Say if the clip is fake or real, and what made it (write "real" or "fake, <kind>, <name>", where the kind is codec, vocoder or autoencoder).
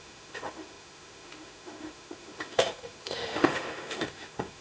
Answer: fake, autoencoder, DAC-VAE